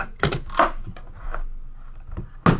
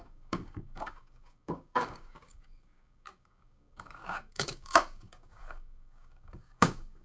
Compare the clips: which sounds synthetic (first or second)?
second